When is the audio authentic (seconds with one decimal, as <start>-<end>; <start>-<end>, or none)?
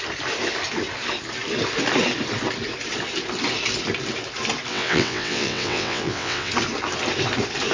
0.0-4.7; 6.5-7.7